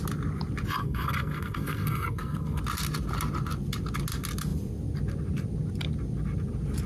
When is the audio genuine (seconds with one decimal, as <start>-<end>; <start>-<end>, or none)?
0.0-0.8; 2.6-6.9